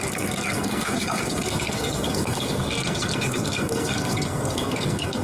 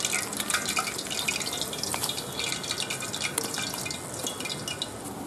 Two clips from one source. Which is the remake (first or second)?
first